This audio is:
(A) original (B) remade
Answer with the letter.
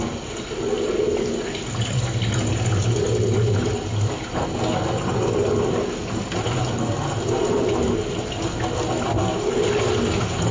A